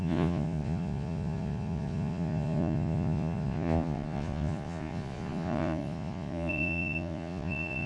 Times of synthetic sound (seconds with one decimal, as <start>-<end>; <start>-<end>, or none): 0.0-7.9